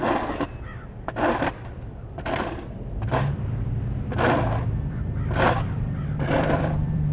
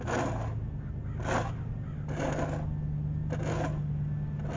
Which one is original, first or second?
second